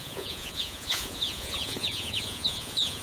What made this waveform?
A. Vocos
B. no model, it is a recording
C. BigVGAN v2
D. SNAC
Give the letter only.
A